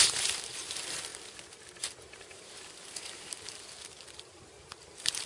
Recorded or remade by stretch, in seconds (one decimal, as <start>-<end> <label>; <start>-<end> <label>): 0.0-1.1 remade; 1.1-2.2 recorded; 2.2-5.3 remade